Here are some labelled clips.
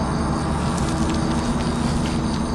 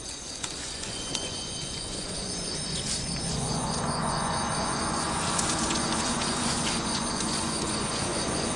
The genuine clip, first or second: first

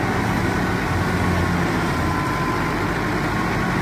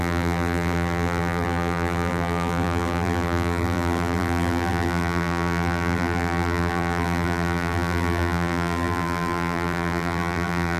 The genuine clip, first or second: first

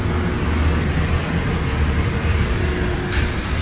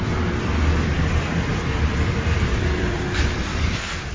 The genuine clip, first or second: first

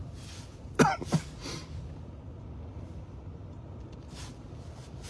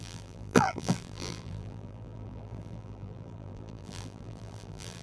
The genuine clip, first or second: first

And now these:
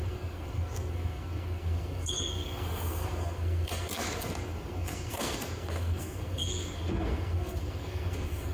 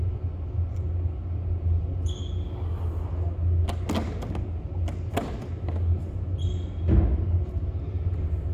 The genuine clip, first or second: second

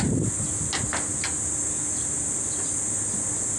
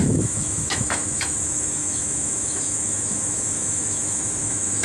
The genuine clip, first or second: first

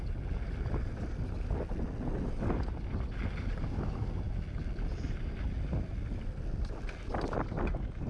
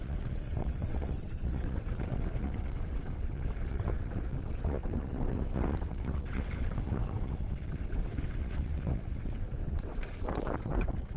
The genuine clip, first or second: first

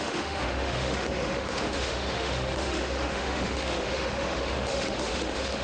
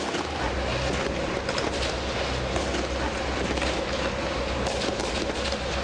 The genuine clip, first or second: second